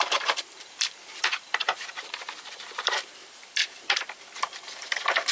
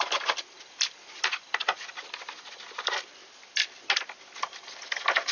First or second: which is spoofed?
first